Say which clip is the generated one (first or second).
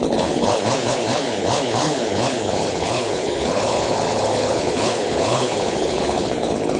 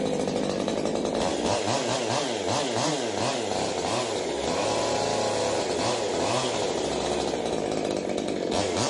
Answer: first